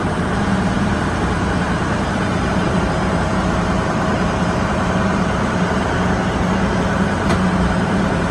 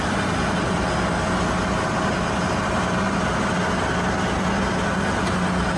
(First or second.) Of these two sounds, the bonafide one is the second